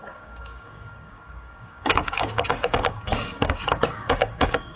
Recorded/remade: remade